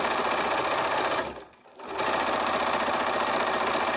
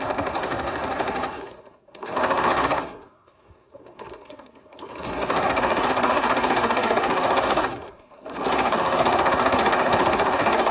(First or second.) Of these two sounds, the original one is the first